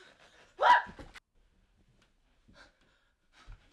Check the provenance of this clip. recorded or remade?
recorded